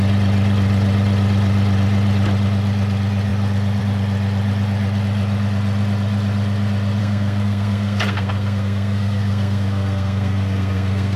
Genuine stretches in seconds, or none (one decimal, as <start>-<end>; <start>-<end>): 0.0-7.0